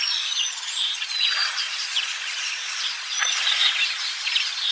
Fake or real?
fake